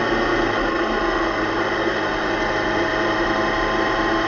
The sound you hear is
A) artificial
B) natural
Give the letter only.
B